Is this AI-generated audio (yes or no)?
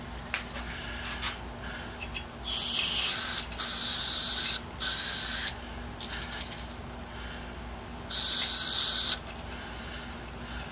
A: no